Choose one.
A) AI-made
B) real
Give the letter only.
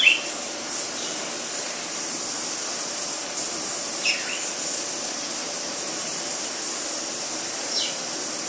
B